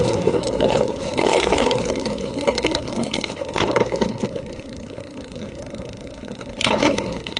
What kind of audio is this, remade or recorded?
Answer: remade